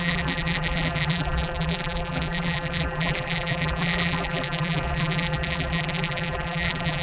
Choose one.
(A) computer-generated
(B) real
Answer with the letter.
A